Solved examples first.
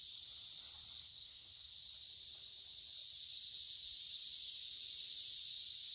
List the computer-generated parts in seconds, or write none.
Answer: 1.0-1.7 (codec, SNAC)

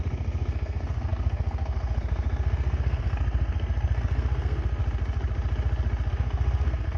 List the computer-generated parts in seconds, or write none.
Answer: 0.0-4.8 (codec, SNAC); 6.1-7.0

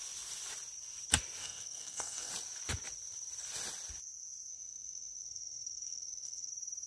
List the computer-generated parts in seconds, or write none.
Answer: 1.4-2.3 (codec, SNAC); 4.5-6.5

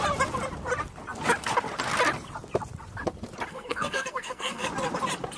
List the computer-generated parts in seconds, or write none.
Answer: 3.5-4.7 (codec, SNAC)

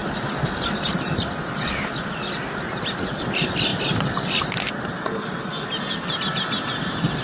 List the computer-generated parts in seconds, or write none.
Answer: 0.0-1.6 (vocoder, BigVGAN v2); 3.7-4.7

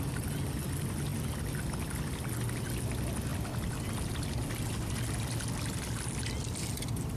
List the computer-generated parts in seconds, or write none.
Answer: none